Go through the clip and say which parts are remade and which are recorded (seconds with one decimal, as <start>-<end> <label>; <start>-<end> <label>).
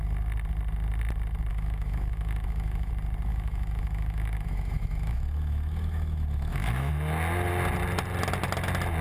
0.0-1.5 recorded; 1.5-2.9 remade; 2.9-3.3 recorded; 3.3-6.9 remade; 6.9-9.0 recorded